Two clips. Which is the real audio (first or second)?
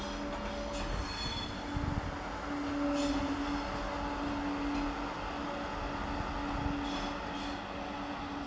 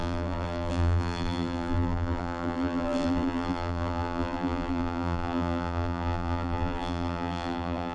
first